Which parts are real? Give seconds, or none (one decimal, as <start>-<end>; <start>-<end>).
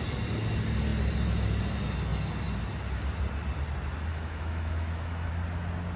0.0-4.1; 5.3-6.0